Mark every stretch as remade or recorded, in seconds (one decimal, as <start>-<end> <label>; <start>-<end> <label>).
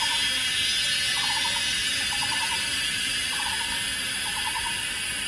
0.0-5.3 recorded